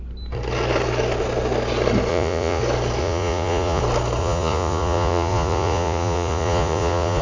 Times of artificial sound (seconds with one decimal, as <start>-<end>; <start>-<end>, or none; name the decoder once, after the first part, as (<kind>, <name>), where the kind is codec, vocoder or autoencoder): 2.1-2.6 (vocoder, Vocos); 3.0-3.8; 4.2-7.2